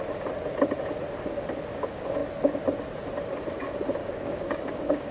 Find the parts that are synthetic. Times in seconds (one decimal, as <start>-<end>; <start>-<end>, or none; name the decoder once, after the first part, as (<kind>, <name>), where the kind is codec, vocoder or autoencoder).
4.0-5.1 (codec, DAC)